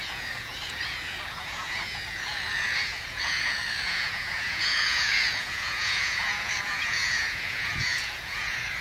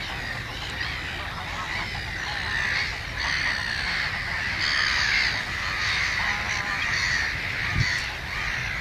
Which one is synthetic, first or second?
first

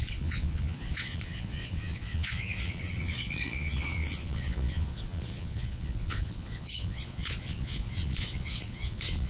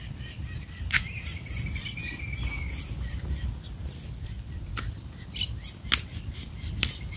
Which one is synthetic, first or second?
first